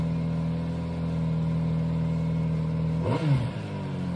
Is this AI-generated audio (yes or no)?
no